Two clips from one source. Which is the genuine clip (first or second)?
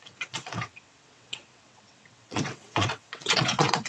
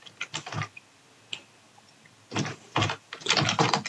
second